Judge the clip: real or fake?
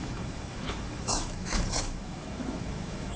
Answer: fake